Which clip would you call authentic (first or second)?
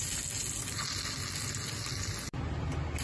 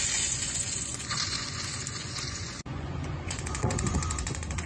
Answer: first